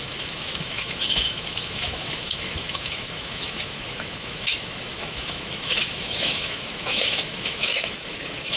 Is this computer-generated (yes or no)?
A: yes